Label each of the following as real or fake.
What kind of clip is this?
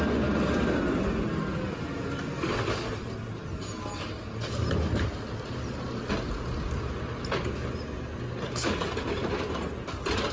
real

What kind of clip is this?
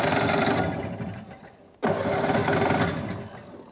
real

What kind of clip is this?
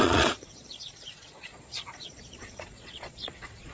fake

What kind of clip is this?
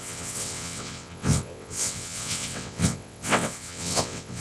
fake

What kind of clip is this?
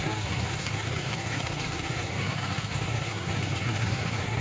fake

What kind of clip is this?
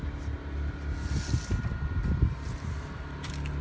real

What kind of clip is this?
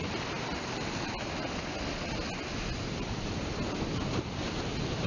real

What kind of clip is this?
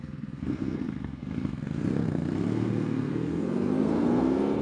fake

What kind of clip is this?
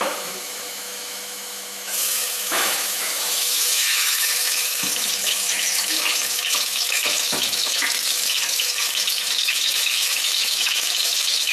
fake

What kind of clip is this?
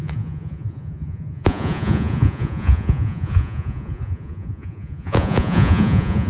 fake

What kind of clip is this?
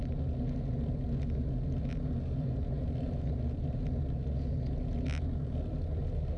real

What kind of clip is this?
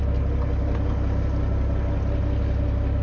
real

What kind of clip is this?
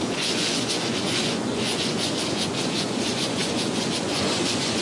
fake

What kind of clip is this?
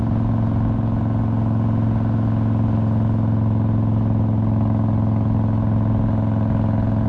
real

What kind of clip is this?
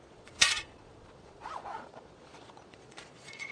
fake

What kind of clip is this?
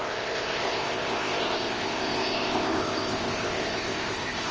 fake